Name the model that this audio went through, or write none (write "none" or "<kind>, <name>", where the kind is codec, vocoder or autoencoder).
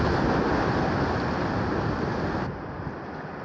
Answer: none